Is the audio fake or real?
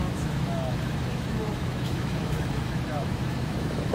fake